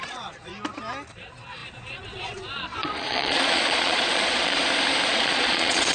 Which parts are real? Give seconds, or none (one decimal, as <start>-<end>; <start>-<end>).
0.5-1.1; 4.6-5.1